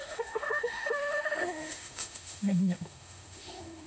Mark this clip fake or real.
fake